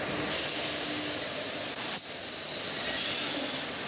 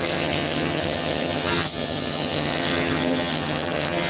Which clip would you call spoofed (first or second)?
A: second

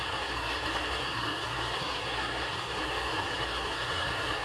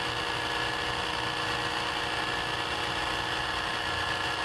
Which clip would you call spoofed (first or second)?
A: first